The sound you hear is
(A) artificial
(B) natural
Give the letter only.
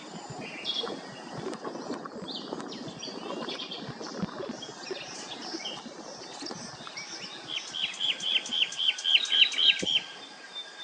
B